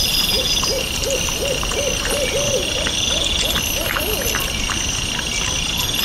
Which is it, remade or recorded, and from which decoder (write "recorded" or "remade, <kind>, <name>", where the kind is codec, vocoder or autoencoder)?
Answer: recorded